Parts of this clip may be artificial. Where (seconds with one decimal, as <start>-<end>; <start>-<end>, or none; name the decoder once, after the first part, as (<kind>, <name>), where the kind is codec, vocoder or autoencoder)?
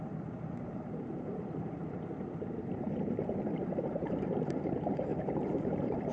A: 0.0-1.8 (vocoder, BigVGAN v2); 3.0-6.1